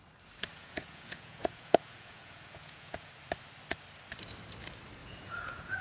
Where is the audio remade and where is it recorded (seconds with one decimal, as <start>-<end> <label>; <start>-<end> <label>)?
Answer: 0.0-0.5 recorded; 0.5-3.1 remade; 3.1-5.0 recorded; 5.0-5.8 remade